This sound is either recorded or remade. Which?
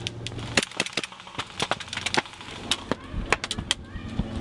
recorded